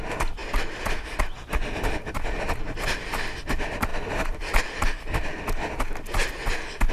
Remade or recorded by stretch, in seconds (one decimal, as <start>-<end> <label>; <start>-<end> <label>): 0.0-3.9 recorded; 3.9-4.6 remade; 4.6-6.9 recorded